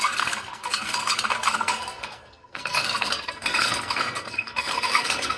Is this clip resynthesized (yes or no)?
yes